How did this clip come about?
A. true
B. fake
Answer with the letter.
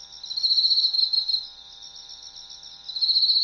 A